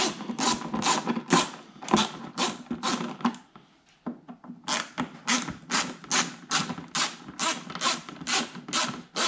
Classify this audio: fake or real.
real